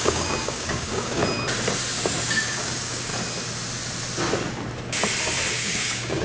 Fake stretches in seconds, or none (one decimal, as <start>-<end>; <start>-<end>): 0.0-1.2; 2.4-3.1; 5.5-6.2